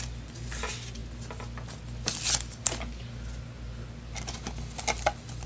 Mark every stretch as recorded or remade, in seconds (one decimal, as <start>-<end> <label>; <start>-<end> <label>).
0.0-5.5 recorded